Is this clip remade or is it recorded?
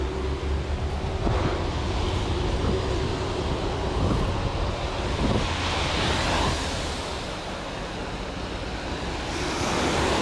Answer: recorded